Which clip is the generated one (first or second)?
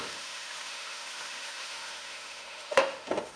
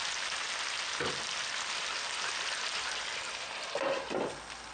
first